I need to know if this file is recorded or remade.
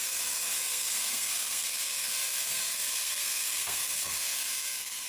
remade